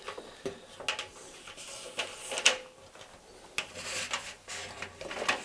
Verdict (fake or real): real